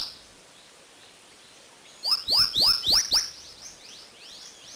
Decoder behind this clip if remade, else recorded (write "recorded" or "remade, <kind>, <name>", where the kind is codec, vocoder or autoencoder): recorded